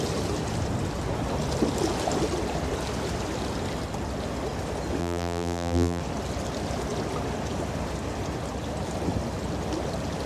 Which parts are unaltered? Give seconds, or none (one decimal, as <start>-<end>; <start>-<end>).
0.0-5.0; 6.0-10.3